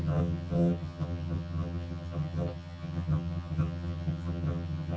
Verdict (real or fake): fake